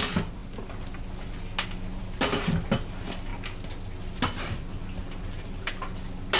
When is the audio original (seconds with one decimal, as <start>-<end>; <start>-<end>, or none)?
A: 0.0-5.0; 5.7-6.4